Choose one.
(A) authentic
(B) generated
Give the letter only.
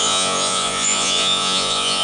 B